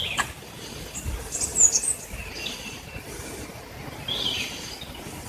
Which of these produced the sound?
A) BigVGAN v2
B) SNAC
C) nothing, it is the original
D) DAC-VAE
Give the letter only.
C